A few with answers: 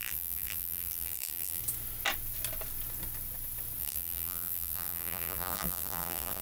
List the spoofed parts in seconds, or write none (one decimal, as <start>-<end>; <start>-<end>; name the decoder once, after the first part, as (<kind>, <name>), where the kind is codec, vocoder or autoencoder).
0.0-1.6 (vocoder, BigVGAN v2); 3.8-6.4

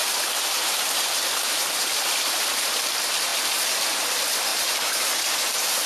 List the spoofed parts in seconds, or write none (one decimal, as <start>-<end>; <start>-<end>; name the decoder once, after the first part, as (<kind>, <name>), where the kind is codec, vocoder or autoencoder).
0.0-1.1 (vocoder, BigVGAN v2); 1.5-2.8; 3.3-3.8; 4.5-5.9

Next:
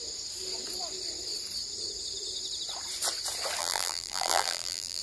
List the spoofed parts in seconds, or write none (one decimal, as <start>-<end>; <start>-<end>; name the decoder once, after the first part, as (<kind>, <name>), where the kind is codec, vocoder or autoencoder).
3.6-5.0 (vocoder, BigVGAN v2)

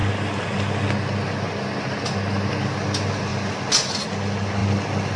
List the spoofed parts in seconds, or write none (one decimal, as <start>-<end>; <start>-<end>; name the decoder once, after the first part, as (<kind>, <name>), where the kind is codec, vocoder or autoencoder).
none

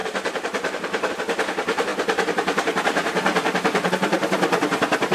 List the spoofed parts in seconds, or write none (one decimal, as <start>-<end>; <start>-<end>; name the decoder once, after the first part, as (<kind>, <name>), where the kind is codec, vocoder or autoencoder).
0.0-1.1 (vocoder, BigVGAN v2); 1.9-3.9

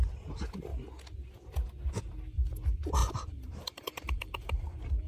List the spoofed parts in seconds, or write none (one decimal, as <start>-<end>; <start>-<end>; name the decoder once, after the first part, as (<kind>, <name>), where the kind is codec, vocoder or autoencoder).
3.0-4.6 (vocoder, BigVGAN v2)